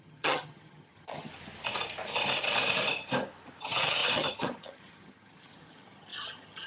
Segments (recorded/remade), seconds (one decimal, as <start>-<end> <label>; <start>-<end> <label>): 0.0-1.3 remade; 1.3-3.6 recorded; 3.6-6.7 remade